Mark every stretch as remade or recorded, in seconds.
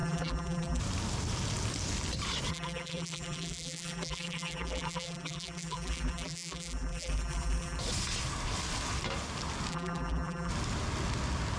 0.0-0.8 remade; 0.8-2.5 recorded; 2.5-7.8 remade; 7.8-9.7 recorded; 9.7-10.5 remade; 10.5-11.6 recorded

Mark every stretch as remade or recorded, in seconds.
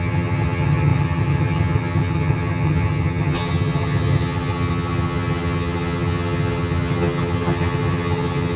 0.0-8.6 remade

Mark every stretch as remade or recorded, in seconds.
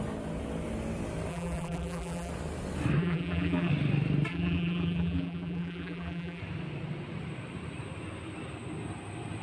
0.0-1.3 recorded; 1.3-2.3 remade; 2.3-3.0 recorded; 3.0-3.7 remade; 3.7-4.3 recorded; 4.3-6.4 remade; 6.4-9.4 recorded